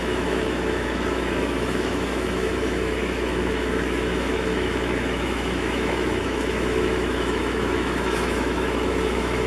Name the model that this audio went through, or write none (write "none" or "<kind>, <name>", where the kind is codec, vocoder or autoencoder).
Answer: autoencoder, DAC-VAE